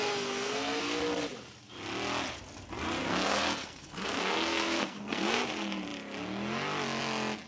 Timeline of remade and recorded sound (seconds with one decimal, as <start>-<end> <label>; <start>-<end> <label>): 0.0-0.8 remade; 0.8-3.0 recorded; 3.0-5.4 remade; 5.4-7.5 recorded